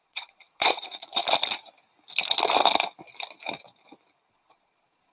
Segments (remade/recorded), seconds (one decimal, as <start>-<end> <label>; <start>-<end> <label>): 0.0-1.2 remade; 1.2-4.3 recorded; 4.3-5.1 remade